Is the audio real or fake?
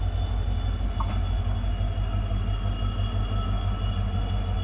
real